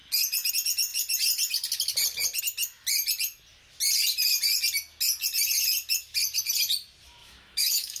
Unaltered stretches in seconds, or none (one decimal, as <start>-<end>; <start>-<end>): 0.0-7.2